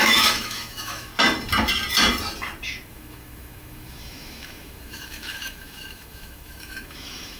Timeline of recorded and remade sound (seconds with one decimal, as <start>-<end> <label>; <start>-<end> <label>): 0.0-1.1 remade; 1.1-2.9 recorded; 2.9-7.4 remade